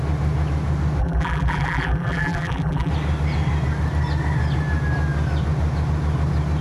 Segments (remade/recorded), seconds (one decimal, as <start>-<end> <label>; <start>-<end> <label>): 0.0-1.0 recorded; 1.0-2.9 remade; 2.9-6.6 recorded